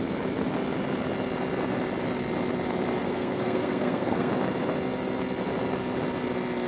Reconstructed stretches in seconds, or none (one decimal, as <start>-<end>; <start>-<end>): 3.0-4.3